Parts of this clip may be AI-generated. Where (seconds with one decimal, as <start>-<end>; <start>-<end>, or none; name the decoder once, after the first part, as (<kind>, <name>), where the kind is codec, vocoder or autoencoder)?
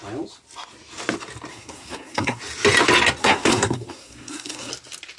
1.5-2.4 (codec, SNAC); 3.2-4.7